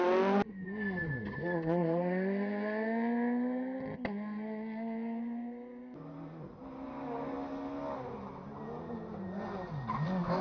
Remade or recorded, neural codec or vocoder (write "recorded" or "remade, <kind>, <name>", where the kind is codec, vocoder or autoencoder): recorded